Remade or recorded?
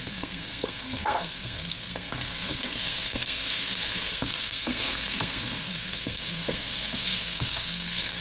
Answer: remade